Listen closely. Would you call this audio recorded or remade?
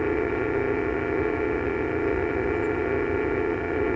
remade